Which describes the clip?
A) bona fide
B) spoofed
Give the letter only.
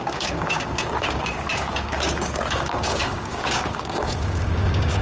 B